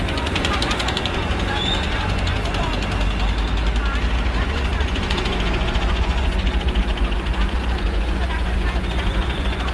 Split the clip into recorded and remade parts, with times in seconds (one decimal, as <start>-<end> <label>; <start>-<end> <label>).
0.0-2.7 remade; 2.7-4.4 recorded; 4.4-9.7 remade